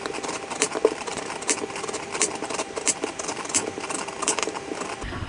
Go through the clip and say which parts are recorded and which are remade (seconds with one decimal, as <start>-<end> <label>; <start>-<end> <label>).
0.0-5.3 remade